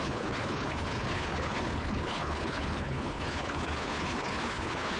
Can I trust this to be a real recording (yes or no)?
no